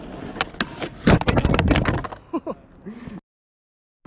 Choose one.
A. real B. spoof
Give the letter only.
A